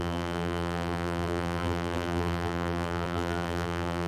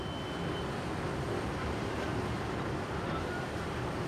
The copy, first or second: first